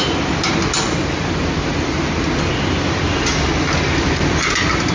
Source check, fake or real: real